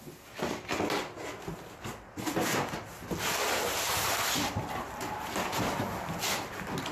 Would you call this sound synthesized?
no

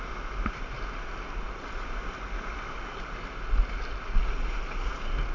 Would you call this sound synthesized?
no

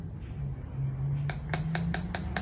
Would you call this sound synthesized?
no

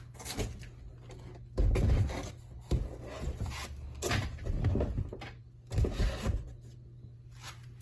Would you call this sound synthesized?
no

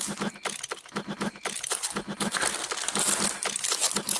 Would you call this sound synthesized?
no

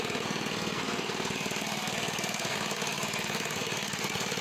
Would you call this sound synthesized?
yes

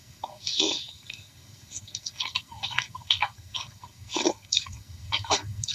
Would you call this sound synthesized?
yes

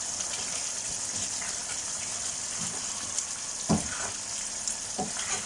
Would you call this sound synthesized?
no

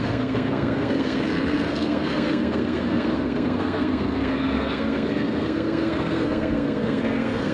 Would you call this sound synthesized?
yes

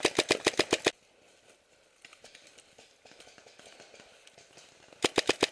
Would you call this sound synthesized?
no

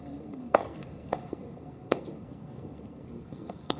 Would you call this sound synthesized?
yes